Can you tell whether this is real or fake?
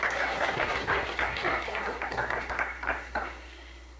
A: fake